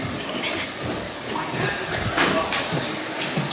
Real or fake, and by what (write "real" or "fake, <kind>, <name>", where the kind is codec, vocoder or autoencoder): real